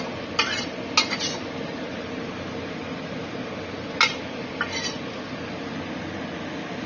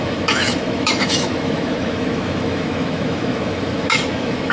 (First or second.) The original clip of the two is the first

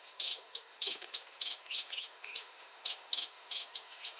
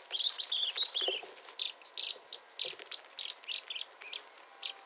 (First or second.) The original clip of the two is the second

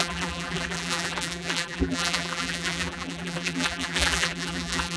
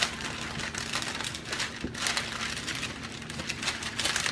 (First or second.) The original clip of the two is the second